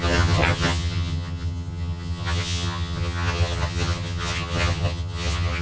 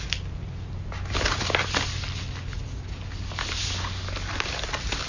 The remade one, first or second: first